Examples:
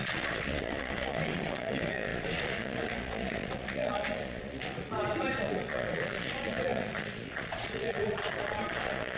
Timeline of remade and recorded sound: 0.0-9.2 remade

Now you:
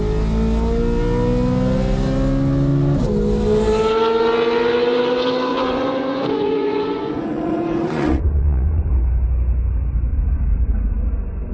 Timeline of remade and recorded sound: 0.0-5.5 recorded; 5.5-8.9 remade; 8.9-10.1 recorded; 10.1-11.5 remade

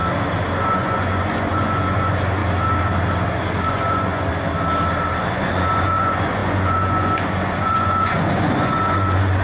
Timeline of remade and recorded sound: 0.0-0.7 recorded; 0.7-2.4 remade; 2.4-3.7 recorded; 3.7-4.3 remade; 4.3-5.2 recorded; 5.2-9.4 remade

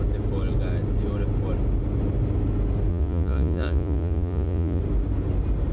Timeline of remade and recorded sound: 0.0-2.9 recorded; 2.9-4.8 remade; 4.8-5.7 recorded

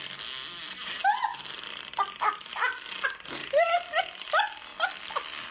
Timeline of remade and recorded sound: 0.0-5.5 recorded

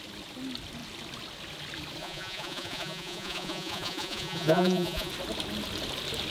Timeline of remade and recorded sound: 0.0-2.0 recorded; 2.0-5.1 remade; 5.1-6.3 recorded

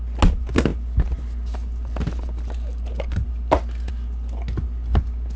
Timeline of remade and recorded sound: 0.0-5.4 recorded

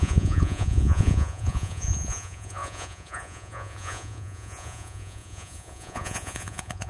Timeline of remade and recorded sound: 0.0-6.9 remade